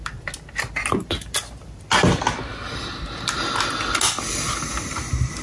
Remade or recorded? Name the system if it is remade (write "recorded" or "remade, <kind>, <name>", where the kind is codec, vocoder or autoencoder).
recorded